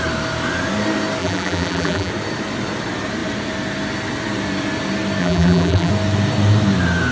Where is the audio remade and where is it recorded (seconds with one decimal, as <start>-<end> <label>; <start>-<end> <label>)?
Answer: 0.0-1.2 recorded; 1.2-2.1 remade; 2.1-5.2 recorded; 5.2-5.9 remade; 5.9-7.1 recorded